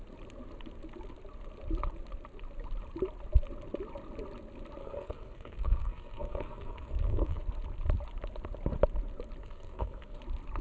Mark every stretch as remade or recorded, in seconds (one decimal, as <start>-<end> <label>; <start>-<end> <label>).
0.0-4.8 recorded; 4.8-7.4 remade; 7.4-9.4 recorded; 9.4-10.2 remade; 10.2-10.6 recorded